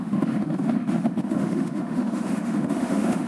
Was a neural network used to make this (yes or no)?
yes